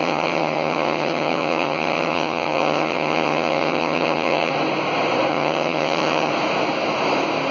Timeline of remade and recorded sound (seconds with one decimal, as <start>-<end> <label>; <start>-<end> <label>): 0.0-4.5 remade; 4.5-5.3 recorded; 5.3-6.3 remade; 6.3-7.5 recorded